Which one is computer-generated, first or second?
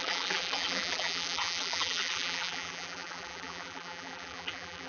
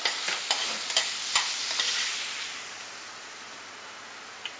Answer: first